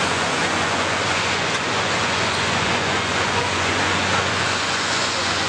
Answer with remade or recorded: remade